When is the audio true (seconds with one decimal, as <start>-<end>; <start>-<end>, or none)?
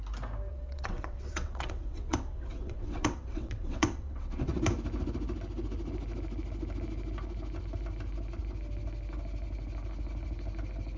0.0-0.5; 4.6-11.0